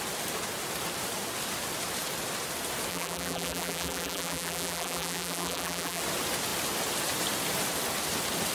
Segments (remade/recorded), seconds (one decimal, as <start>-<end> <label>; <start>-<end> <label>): 0.0-2.9 recorded; 2.9-6.0 remade; 6.0-8.5 recorded